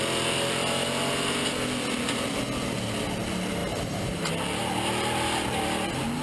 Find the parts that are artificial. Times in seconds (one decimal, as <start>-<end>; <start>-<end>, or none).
3.6-4.3